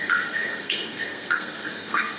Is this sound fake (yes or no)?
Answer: yes